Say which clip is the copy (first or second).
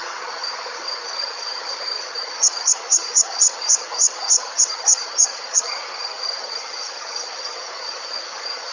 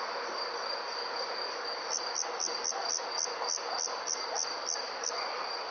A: first